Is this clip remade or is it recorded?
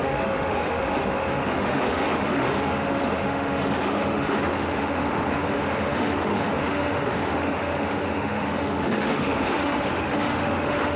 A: remade